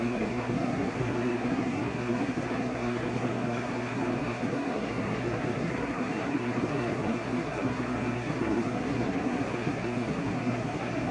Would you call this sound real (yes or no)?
no